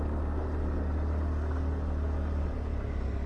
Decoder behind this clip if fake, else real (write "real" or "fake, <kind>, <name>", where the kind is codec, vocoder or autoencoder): real